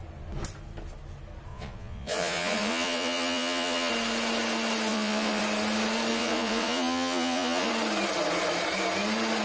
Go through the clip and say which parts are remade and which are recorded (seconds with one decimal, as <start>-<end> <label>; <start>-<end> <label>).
0.0-1.5 recorded; 1.5-3.9 remade; 3.9-4.9 recorded; 4.9-5.4 remade; 5.4-6.1 recorded; 6.1-7.7 remade; 7.7-9.4 recorded